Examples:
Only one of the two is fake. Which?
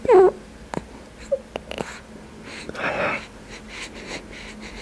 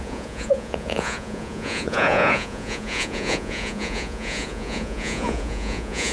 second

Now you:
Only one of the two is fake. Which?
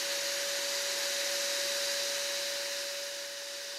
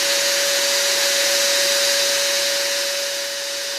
second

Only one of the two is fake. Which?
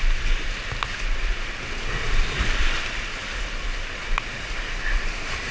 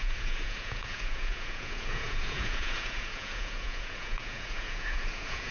second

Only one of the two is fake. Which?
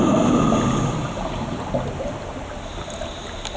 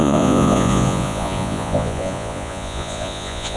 second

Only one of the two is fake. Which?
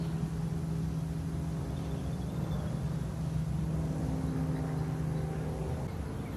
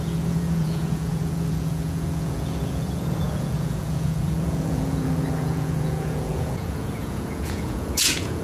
second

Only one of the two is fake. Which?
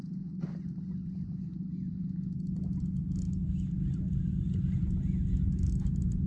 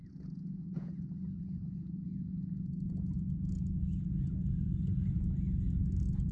second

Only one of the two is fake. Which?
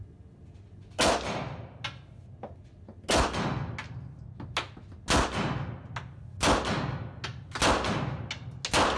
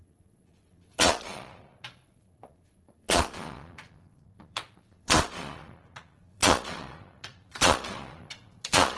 second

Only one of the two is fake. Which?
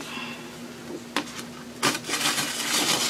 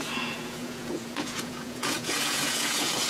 second